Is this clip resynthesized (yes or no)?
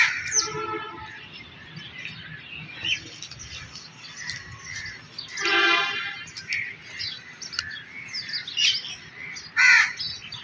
no